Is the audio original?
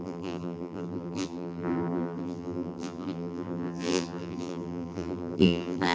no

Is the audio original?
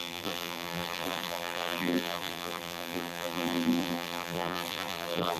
no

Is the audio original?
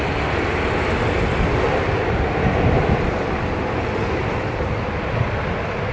yes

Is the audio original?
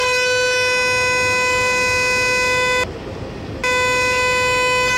yes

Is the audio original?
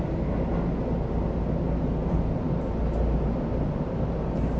yes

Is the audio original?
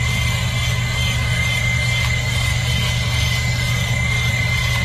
yes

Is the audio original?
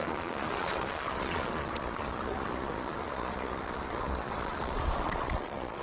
no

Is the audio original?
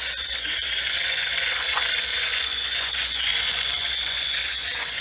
no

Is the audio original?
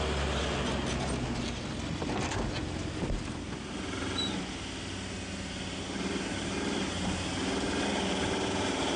yes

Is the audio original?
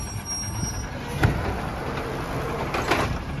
yes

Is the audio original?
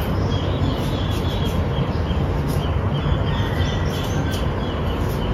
yes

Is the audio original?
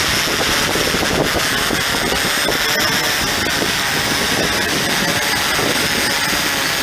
yes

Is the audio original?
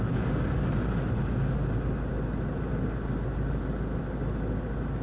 yes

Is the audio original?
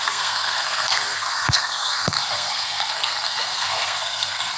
no